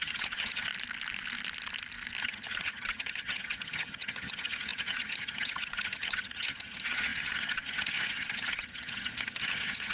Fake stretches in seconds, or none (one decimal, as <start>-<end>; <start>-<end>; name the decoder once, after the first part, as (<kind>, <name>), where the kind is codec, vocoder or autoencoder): 0.0-0.7 (vocoder, HiFi-GAN); 2.2-9.9